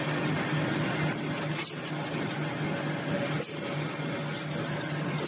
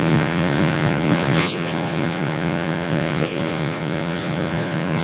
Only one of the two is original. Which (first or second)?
first